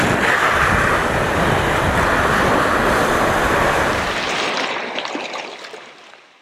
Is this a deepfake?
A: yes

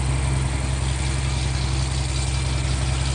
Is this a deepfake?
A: no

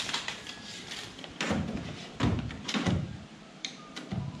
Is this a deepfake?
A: yes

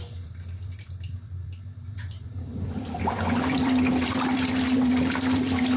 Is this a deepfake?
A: yes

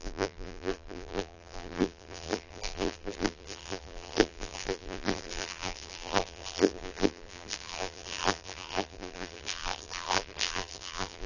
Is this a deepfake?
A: yes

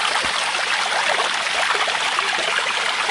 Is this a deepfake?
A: no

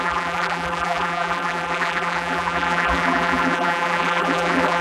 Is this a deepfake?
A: yes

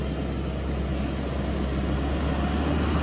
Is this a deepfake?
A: no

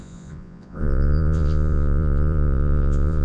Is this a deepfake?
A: yes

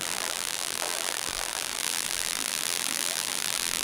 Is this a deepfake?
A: yes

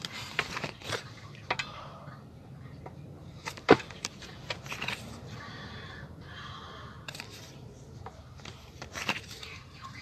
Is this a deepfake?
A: yes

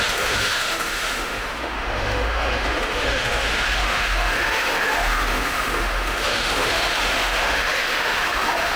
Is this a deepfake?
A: yes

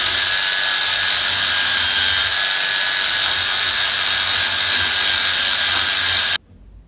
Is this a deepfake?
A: no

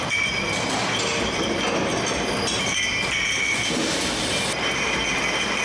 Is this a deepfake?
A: no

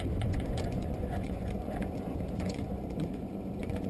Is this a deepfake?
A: yes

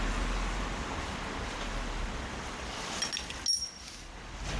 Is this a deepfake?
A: no